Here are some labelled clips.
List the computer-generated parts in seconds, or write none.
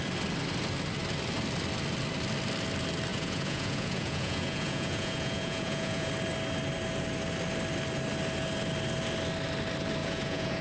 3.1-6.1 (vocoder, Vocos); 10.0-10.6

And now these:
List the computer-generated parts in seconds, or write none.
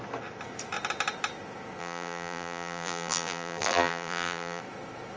1.8-4.6 (vocoder, BigVGAN v2)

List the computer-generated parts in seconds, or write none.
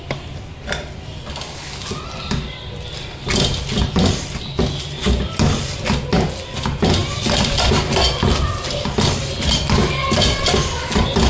none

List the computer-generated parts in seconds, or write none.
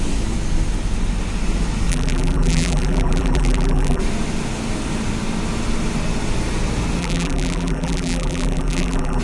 1.9-4.0 (vocoder, BigVGAN v2); 7.0-9.2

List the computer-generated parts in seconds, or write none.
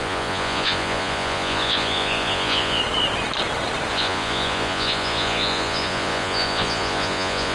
0.0-2.8 (vocoder, Vocos); 3.9-7.5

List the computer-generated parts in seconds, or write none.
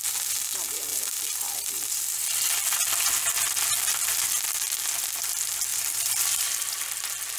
0.9-2.6 (vocoder, BigVGAN v2); 5.7-7.0